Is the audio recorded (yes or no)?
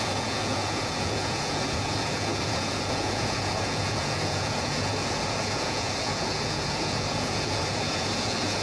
no